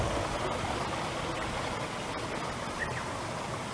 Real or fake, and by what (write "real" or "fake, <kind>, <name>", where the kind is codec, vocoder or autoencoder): real